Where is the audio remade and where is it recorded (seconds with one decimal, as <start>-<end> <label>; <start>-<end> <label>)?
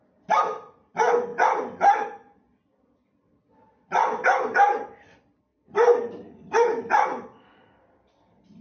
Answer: 0.0-5.5 recorded; 5.5-6.9 remade; 6.9-8.6 recorded